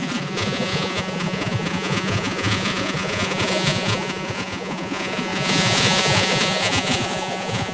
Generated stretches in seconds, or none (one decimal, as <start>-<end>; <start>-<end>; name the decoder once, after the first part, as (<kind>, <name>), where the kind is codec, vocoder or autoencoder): 0.0-7.7 (vocoder, Vocos)